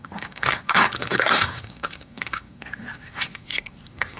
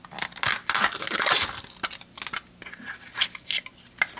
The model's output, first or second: first